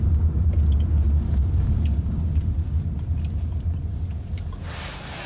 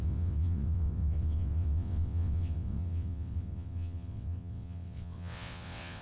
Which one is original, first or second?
first